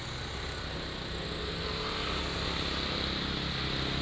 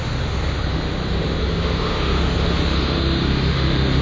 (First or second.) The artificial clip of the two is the second